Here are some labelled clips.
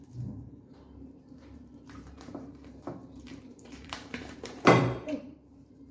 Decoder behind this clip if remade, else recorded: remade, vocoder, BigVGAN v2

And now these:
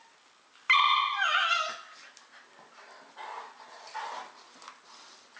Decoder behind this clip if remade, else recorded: recorded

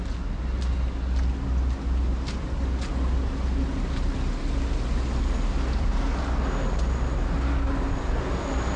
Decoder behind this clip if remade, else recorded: recorded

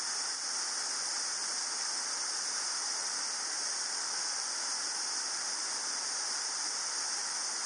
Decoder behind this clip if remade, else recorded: recorded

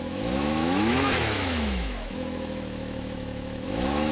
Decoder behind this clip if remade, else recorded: remade, autoencoder, DAC-VAE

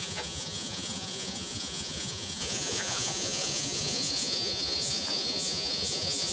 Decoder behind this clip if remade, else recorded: remade, vocoder, Vocos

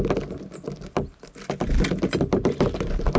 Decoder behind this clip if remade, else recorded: recorded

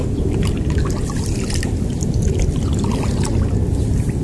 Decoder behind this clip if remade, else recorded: remade, vocoder, BigVGAN v2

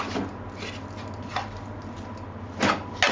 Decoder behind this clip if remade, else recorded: recorded